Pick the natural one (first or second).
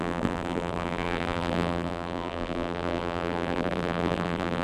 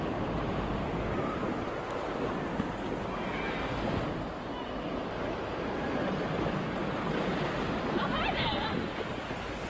second